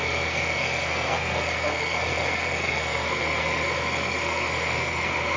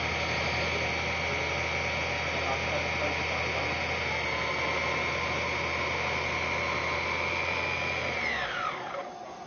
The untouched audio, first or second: second